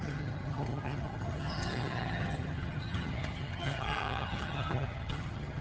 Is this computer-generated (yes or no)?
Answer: yes